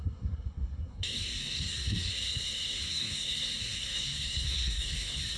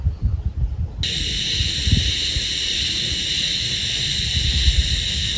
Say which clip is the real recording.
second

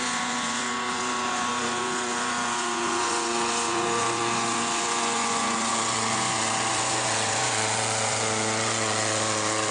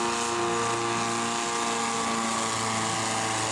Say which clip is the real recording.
second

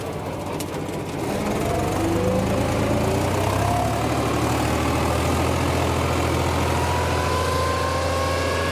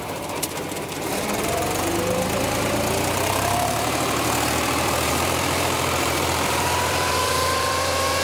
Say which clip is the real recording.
first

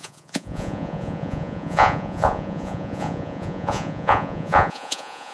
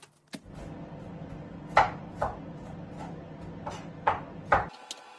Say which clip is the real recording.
second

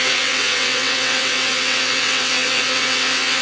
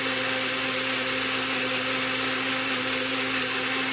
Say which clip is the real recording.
second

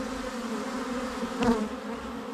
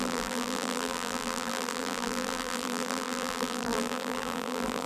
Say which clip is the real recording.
first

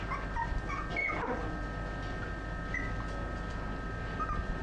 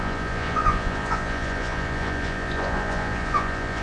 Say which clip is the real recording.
first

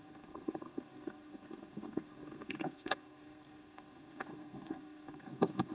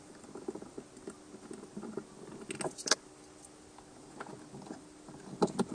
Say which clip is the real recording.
second